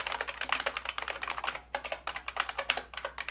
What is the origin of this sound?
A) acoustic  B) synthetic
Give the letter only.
A